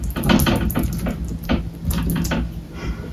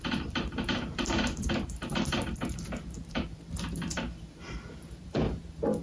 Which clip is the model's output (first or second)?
second